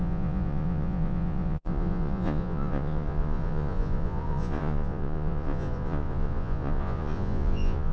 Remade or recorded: remade